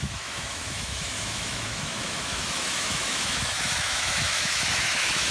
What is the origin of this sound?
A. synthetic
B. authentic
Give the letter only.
A